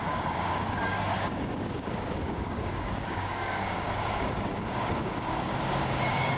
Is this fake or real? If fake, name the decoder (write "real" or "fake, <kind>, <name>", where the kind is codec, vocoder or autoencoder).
fake, codec, DAC